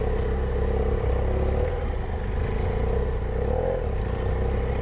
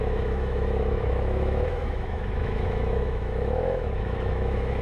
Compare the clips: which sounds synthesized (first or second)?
second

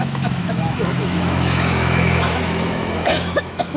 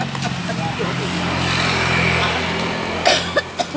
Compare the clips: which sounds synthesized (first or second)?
first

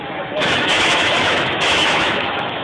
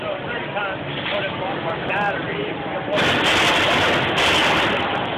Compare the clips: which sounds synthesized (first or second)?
first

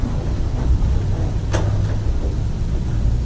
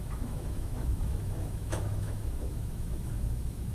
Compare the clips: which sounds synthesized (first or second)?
second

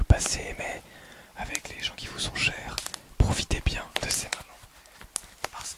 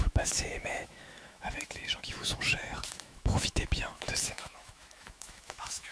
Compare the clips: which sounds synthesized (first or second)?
second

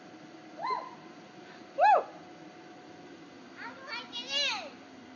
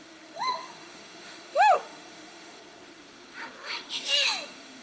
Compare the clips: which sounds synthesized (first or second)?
second